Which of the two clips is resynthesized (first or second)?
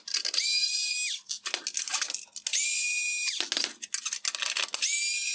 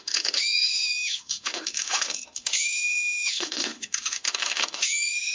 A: second